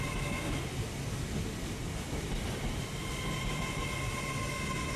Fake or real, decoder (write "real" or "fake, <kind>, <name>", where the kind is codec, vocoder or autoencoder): real